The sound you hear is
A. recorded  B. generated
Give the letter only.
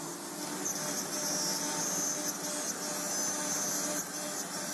A